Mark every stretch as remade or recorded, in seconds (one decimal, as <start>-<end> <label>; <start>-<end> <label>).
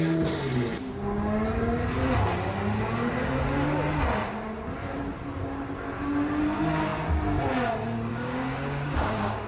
0.0-8.1 recorded; 8.1-9.5 remade